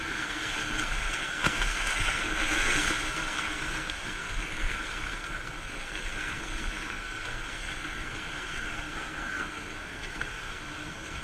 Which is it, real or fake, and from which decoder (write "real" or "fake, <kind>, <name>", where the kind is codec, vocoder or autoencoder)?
fake, codec, SNAC